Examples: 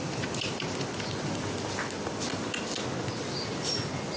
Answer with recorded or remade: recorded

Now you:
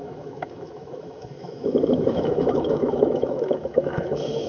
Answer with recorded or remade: remade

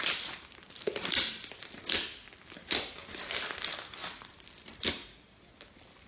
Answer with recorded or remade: recorded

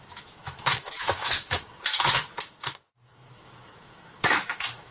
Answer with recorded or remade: remade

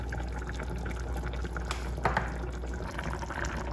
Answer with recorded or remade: recorded